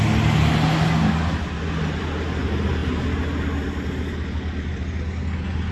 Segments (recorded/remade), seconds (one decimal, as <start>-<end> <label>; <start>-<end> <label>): 0.0-5.7 recorded